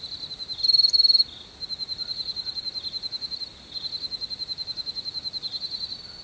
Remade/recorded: recorded